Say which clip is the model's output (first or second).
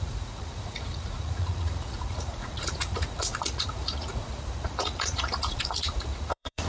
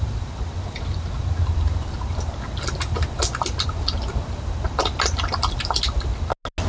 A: first